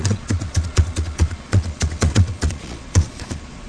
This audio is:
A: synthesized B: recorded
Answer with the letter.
A